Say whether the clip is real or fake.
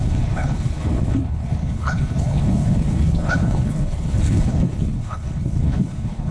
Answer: fake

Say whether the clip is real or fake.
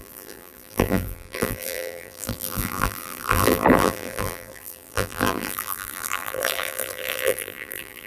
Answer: fake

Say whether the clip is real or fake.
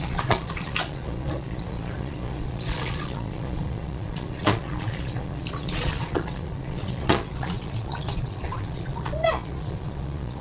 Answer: fake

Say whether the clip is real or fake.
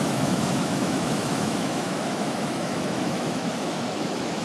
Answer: fake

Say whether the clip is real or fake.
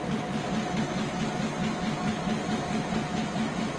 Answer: real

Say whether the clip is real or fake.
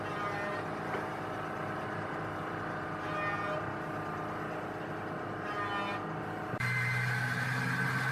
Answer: real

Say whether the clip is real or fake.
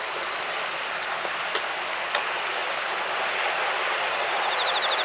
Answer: real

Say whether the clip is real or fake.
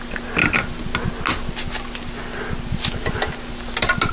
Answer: real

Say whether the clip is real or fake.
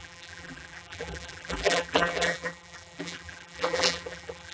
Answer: fake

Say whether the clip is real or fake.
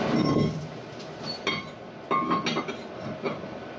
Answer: fake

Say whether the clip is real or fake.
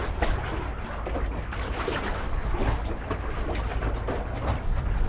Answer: real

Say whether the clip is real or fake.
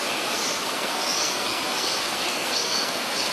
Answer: fake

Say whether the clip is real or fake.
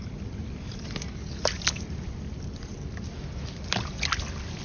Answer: real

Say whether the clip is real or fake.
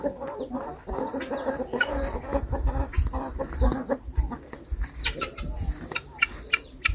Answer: real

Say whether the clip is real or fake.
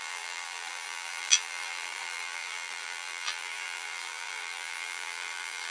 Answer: fake